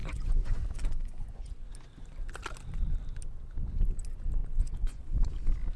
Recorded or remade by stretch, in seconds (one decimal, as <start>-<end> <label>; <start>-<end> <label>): 0.0-1.7 remade; 1.7-4.4 recorded; 4.4-5.0 remade; 5.0-5.8 recorded